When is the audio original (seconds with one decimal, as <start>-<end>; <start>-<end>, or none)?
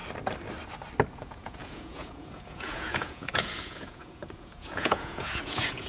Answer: 0.0-1.1